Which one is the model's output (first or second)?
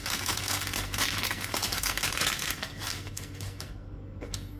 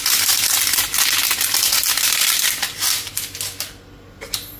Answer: first